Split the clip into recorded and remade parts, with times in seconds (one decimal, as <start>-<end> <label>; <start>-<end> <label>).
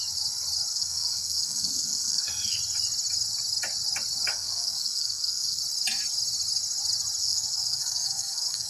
0.0-0.7 recorded; 0.7-2.6 remade; 2.6-4.3 recorded; 4.3-5.6 remade; 5.6-7.2 recorded; 7.2-8.7 remade